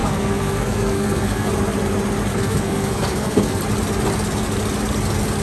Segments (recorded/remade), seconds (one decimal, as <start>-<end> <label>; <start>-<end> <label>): 0.0-1.5 remade; 1.5-2.3 recorded; 2.3-3.6 remade; 3.6-5.4 recorded